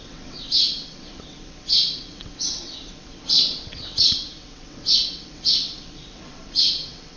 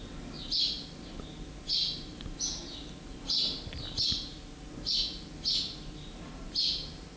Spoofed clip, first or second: first